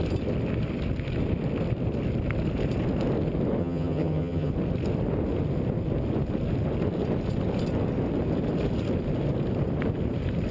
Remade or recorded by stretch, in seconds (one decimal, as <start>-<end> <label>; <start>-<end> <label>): 0.0-3.6 recorded; 3.6-4.5 remade; 4.5-10.5 recorded